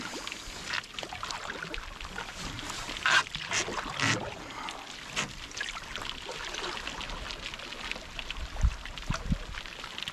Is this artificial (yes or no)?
no